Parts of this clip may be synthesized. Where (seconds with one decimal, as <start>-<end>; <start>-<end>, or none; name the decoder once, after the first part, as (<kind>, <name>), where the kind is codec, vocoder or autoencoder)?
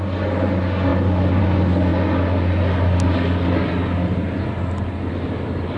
none